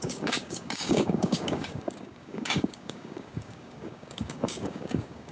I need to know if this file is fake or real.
fake